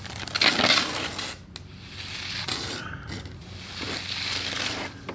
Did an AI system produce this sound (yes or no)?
no